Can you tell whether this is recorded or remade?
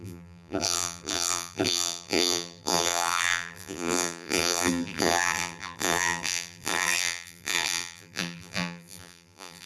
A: remade